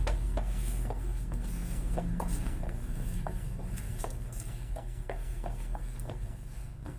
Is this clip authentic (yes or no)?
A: no